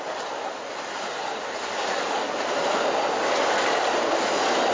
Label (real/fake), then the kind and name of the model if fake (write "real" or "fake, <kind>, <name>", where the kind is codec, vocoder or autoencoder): real